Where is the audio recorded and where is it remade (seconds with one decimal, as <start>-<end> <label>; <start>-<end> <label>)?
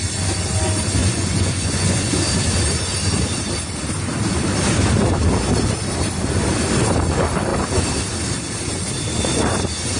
0.0-1.0 recorded; 1.0-2.1 remade; 2.1-10.0 recorded